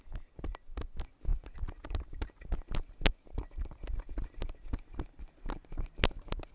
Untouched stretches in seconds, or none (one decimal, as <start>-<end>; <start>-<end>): 0.0-6.5